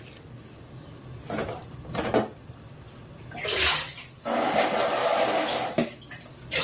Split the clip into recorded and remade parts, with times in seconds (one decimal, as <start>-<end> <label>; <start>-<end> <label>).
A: 0.0-5.0 recorded; 5.0-6.0 remade; 6.0-6.6 recorded